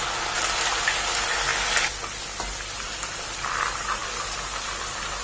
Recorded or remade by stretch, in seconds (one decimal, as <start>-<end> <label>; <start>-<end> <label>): 0.0-5.2 recorded